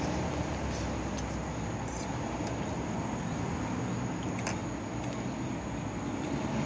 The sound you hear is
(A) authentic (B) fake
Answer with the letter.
A